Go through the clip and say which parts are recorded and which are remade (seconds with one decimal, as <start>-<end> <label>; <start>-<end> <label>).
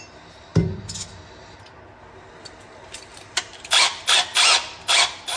0.0-3.1 recorded; 3.1-4.0 remade; 4.0-5.4 recorded